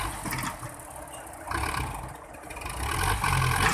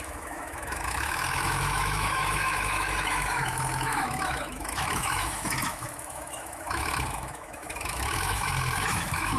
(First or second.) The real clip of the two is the first